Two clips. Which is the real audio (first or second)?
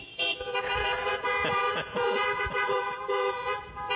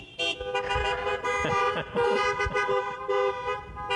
second